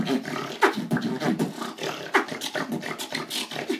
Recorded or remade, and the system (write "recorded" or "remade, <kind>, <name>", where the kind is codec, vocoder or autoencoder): recorded